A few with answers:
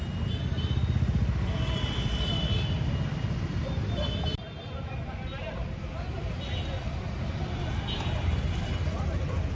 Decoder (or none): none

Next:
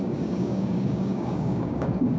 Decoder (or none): codec, DAC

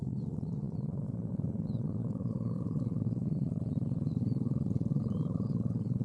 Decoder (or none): vocoder, Vocos